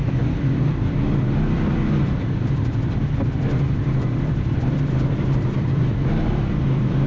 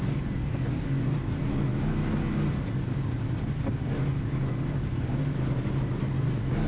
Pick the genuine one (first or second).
second